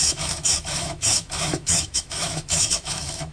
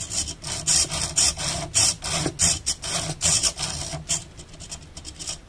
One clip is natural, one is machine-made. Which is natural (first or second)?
second